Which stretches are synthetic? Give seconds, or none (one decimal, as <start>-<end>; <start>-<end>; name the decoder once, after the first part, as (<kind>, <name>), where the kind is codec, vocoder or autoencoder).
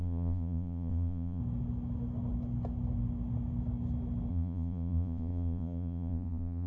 0.0-1.4 (vocoder, Vocos); 4.3-6.7